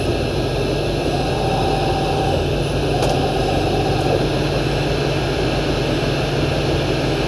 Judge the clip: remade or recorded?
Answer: recorded